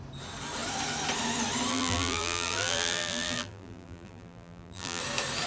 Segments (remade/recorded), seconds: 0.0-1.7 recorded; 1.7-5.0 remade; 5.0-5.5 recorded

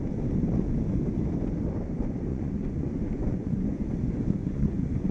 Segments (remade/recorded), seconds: 0.0-2.3 recorded; 2.3-3.9 remade; 3.9-4.4 recorded; 4.4-5.1 remade

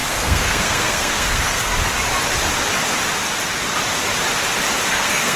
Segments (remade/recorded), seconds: 0.0-1.7 remade; 1.7-4.9 recorded; 4.9-5.4 remade

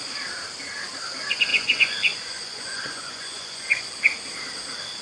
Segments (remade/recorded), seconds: 0.0-1.5 recorded; 1.5-3.9 remade; 3.9-5.0 recorded

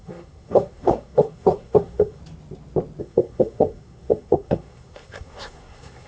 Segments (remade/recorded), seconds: 0.0-2.2 remade; 2.2-3.0 recorded; 3.0-6.1 remade